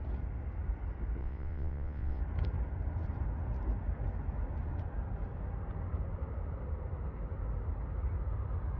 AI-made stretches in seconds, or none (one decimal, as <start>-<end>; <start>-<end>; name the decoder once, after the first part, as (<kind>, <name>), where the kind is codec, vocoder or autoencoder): 1.2-2.2 (vocoder, WaveNeXt)